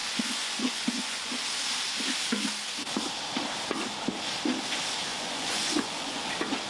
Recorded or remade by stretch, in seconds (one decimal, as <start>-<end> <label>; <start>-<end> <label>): 0.0-1.3 remade; 1.3-5.1 recorded; 5.1-6.3 remade; 6.3-6.7 recorded